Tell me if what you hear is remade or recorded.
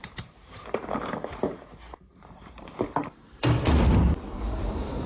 remade